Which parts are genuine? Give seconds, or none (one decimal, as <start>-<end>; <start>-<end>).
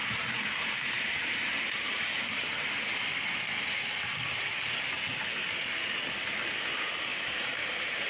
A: 2.7-7.1